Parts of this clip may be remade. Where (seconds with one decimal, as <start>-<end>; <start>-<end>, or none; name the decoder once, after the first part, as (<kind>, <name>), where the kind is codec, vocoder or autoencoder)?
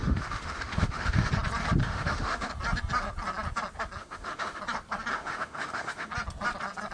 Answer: 0.0-1.3 (autoencoder, DAC-VAE); 1.8-2.5; 4.0-4.6; 5.1-6.1